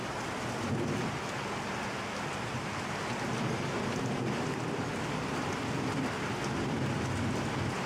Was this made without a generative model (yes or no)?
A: yes